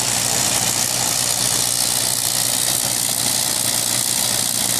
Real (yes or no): yes